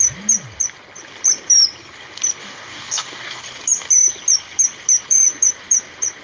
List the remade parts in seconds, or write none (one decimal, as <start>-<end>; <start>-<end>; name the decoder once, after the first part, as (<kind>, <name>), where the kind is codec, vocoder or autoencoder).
2.4-3.4 (codec, DAC)